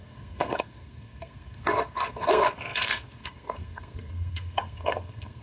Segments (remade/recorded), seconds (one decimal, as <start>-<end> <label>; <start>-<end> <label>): 0.0-5.4 remade